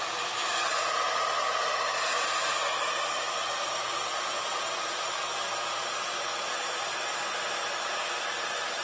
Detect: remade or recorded recorded